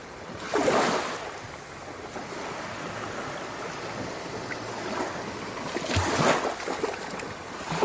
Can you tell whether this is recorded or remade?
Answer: recorded